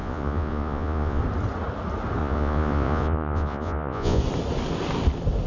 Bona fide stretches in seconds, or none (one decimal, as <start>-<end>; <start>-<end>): 1.2-2.2; 4.2-5.5